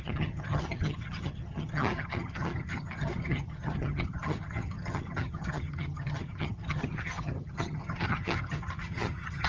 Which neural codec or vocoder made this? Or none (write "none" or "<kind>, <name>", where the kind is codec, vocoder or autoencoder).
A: vocoder, HiFi-GAN